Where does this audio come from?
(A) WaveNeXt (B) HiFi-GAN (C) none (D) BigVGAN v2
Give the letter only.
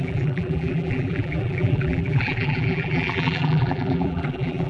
D